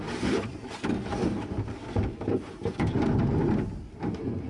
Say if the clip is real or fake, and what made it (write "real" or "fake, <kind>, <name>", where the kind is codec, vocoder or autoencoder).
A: real